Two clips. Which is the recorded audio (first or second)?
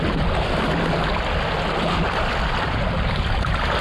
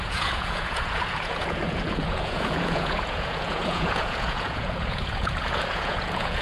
first